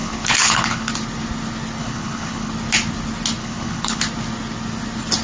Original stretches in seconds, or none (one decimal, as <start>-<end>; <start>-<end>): 0.9-1.8; 2.5-3.4; 4.0-5.2